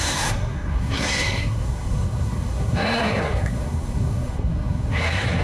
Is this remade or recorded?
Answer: remade